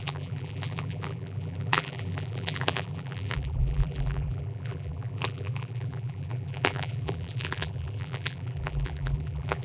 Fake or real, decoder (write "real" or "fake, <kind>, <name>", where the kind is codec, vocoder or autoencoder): fake, vocoder, BigVGAN v2